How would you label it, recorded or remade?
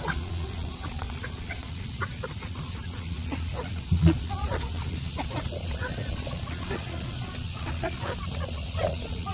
remade